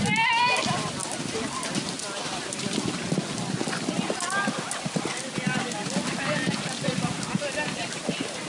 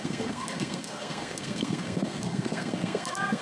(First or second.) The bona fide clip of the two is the first